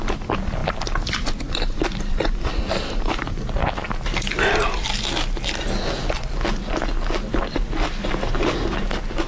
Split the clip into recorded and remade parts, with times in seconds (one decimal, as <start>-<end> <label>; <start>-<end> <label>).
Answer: 0.0-0.6 recorded; 0.6-3.3 remade; 3.3-9.3 recorded